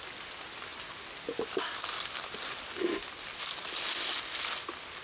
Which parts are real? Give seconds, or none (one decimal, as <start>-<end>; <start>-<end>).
0.0-5.0